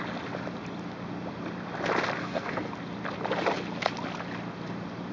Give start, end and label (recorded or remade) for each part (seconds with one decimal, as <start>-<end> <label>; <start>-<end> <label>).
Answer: 0.0-2.2 recorded; 2.2-2.7 remade; 2.7-5.1 recorded